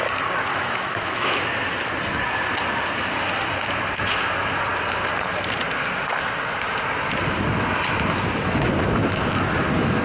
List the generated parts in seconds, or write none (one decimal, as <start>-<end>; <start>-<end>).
0.5-1.4